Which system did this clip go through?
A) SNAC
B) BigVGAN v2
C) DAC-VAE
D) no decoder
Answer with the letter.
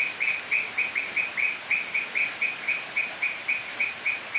D